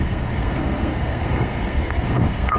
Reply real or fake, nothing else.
fake